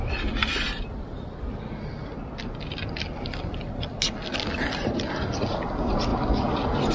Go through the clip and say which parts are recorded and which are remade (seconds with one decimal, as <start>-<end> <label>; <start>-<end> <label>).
0.0-6.9 recorded